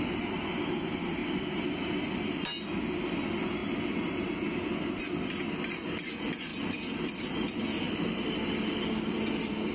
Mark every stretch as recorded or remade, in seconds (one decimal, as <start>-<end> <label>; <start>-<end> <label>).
0.0-9.7 recorded